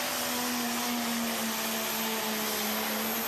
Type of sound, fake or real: real